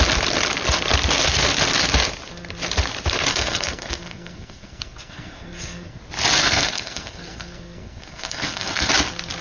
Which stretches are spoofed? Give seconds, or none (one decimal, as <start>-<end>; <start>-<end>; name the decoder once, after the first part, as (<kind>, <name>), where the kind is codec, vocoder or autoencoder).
3.3-6.0 (codec, SNAC); 6.4-8.9